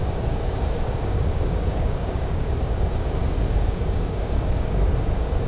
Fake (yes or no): yes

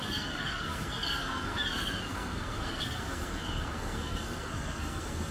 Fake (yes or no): yes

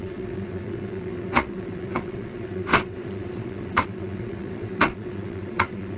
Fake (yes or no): yes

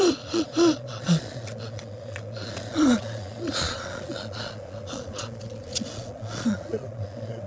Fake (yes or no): yes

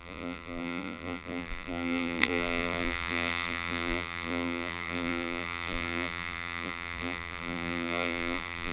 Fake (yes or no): yes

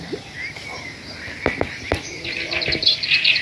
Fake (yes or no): no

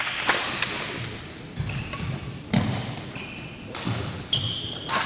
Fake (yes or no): no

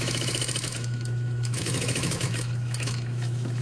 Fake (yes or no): yes